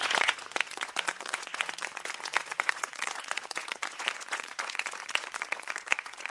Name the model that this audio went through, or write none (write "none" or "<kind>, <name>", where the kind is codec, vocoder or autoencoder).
vocoder, Vocos